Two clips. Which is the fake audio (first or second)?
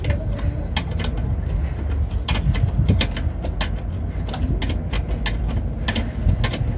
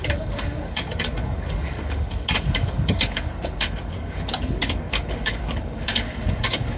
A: second